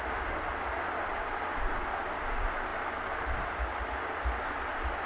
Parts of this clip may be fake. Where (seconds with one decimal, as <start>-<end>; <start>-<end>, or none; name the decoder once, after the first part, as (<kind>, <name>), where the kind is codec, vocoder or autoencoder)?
none